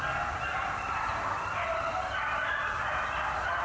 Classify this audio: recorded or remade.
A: recorded